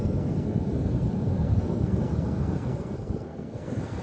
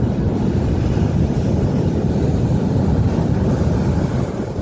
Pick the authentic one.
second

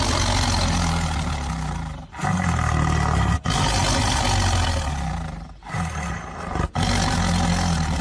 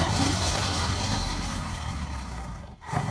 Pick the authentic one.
first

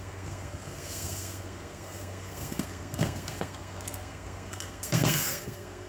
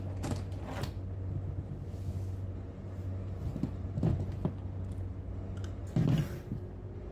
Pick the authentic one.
second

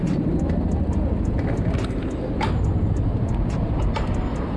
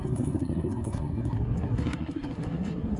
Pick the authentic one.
first